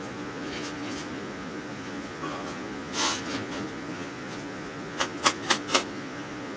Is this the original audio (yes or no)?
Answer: no